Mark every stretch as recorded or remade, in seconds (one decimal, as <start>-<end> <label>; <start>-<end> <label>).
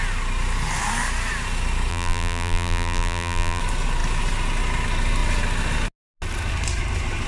0.0-1.9 recorded; 1.9-3.6 remade; 3.6-7.3 recorded